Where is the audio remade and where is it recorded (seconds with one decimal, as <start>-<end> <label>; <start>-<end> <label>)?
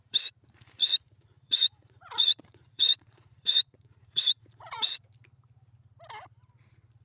0.0-0.8 recorded; 0.8-5.0 remade; 5.0-7.0 recorded